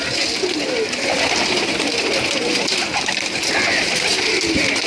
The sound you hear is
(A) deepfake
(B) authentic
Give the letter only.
B